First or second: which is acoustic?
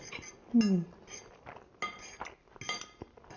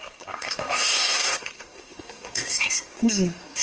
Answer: first